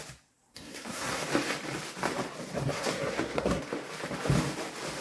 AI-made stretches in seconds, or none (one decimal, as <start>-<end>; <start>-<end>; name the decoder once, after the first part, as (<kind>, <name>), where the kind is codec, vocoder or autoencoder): 0.5-1.2 (codec, SNAC); 2.6-3.6